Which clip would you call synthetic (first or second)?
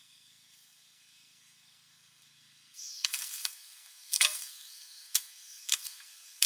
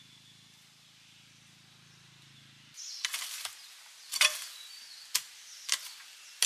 first